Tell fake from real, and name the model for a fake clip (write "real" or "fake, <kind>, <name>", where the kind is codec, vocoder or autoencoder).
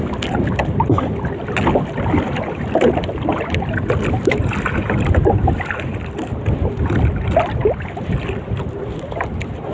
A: real